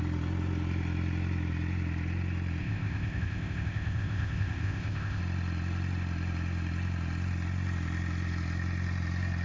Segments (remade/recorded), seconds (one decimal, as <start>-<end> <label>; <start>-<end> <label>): 0.0-2.6 recorded; 2.6-5.2 remade; 5.2-9.4 recorded

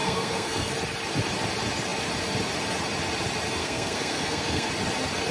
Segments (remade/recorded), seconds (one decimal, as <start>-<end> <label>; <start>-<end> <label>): 0.0-0.7 remade; 0.7-3.6 recorded; 3.6-4.7 remade; 4.7-5.3 recorded

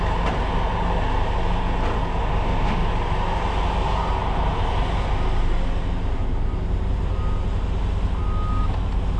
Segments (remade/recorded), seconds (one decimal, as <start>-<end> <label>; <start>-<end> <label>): 0.0-2.2 recorded; 2.2-2.9 remade; 2.9-9.2 recorded

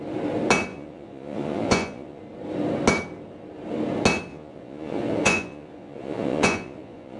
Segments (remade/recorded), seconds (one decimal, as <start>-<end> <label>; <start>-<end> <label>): 0.0-0.7 recorded; 0.7-2.2 remade; 2.2-4.3 recorded; 4.3-7.2 remade

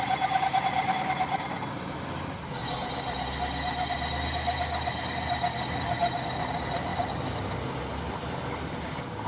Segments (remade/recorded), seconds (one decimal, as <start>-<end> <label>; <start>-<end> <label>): 0.0-9.3 recorded

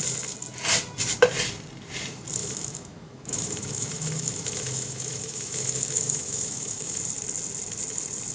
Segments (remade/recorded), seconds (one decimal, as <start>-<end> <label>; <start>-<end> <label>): 0.0-2.4 recorded; 2.4-7.0 remade; 7.0-8.3 recorded

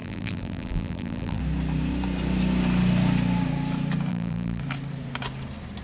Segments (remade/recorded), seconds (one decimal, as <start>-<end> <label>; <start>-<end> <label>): 0.0-1.4 remade; 1.4-4.1 recorded; 4.1-4.6 remade; 4.6-5.8 recorded

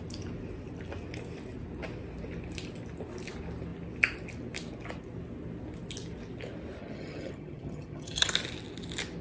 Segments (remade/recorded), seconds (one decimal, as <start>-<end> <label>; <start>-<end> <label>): 0.0-6.8 recorded; 6.8-8.3 remade; 8.3-9.2 recorded